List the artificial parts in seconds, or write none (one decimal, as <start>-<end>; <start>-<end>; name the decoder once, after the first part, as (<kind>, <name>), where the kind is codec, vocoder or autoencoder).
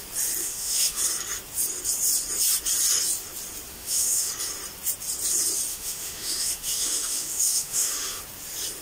0.4-1.0 (autoencoder, DAC-VAE); 3.7-4.3; 5.7-8.2